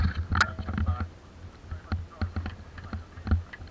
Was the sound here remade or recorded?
recorded